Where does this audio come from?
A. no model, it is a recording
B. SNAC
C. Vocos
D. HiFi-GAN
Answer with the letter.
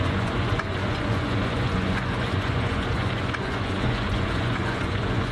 C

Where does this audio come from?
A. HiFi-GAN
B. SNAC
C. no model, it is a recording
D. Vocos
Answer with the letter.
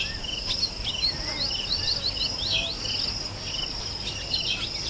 C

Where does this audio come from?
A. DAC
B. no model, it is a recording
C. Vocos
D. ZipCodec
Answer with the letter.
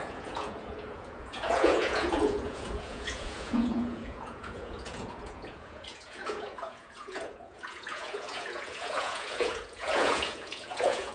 C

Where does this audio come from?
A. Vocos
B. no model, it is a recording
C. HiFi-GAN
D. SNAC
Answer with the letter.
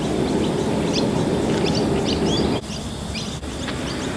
B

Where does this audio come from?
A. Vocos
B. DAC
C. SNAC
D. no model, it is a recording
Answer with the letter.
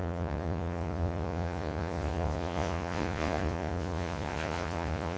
A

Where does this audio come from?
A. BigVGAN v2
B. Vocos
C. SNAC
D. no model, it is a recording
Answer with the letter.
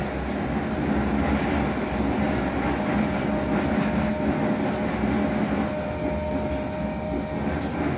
D